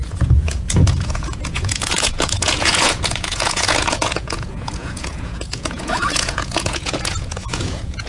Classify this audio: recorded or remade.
remade